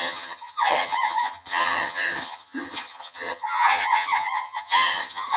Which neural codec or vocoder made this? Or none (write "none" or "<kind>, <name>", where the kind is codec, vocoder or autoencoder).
vocoder, HiFi-GAN